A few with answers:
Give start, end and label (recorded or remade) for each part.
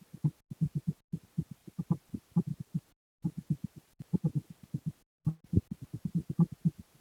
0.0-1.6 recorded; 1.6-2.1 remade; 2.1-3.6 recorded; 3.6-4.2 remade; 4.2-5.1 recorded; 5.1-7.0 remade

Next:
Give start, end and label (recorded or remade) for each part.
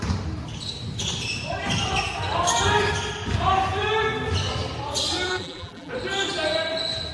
0.0-5.3 recorded; 5.3-5.9 remade; 5.9-7.1 recorded